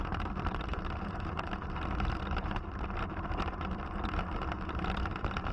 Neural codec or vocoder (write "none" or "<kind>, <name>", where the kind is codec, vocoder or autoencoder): vocoder, BigVGAN v2